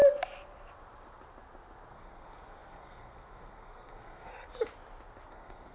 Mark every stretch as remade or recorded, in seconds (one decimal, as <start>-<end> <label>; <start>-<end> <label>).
0.0-1.9 recorded; 1.9-4.3 remade; 4.3-5.3 recorded; 5.3-5.7 remade